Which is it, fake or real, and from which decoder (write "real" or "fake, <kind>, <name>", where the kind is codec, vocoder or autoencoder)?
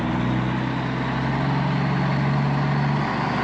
real